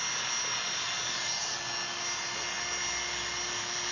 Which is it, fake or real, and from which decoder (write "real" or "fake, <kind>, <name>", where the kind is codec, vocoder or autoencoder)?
real